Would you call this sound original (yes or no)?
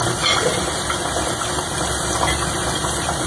yes